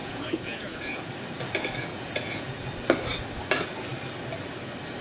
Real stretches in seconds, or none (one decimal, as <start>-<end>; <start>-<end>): 1.1-1.9; 2.4-5.0